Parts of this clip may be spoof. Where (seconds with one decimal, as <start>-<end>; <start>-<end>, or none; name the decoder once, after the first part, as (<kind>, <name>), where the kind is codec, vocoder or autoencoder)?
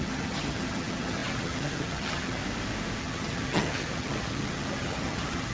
0.0-2.4 (vocoder, HiFi-GAN); 3.0-5.5